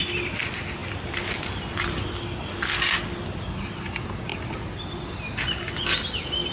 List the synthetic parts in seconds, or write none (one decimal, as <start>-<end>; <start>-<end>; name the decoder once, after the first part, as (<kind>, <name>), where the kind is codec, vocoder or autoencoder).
none